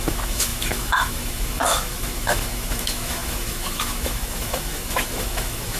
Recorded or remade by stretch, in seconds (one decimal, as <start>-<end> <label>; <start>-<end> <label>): 0.0-5.8 remade